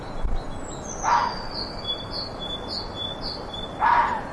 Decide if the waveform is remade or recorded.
recorded